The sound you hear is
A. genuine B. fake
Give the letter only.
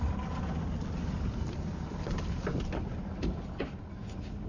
A